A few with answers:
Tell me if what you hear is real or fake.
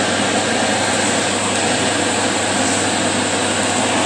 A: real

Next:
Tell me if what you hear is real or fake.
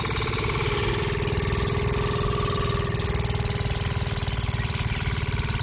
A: real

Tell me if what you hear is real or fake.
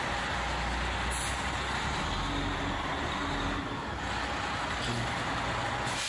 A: real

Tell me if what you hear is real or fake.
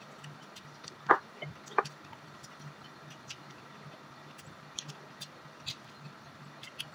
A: real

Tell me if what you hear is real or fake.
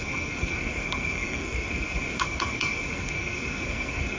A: fake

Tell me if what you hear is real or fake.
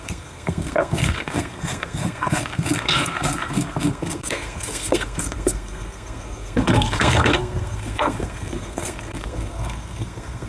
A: fake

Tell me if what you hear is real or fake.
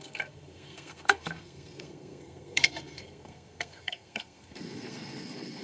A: fake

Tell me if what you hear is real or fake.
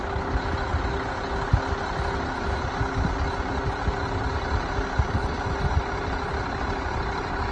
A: real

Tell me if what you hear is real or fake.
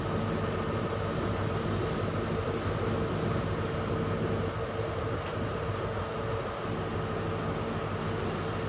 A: real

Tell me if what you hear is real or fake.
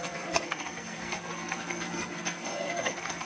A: fake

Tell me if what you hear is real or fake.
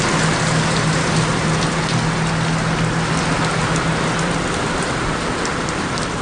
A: real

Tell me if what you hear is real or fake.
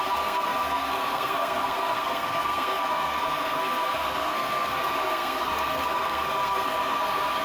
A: fake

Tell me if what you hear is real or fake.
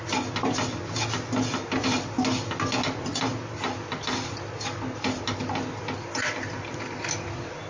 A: real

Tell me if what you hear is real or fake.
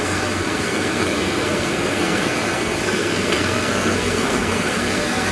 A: fake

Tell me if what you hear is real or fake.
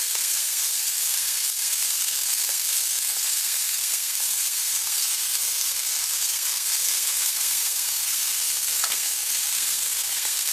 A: fake